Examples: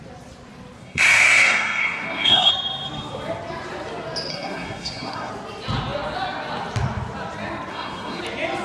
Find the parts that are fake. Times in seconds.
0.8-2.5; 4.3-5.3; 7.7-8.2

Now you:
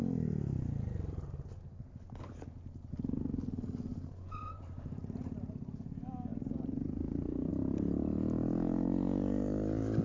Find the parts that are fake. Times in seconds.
3.9-5.7; 6.3-7.5

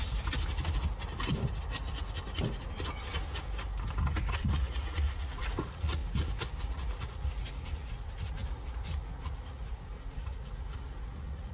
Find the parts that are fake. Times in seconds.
4.4-6.0; 6.6-11.5

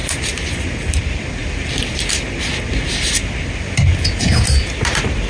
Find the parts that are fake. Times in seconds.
none